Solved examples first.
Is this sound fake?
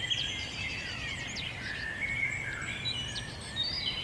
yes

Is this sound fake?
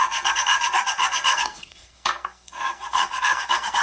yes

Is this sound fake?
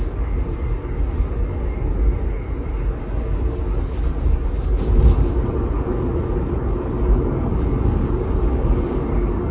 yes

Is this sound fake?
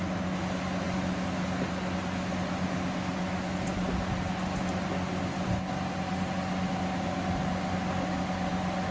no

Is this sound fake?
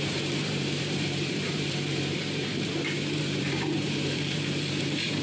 yes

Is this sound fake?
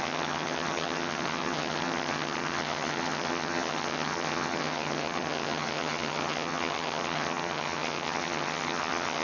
yes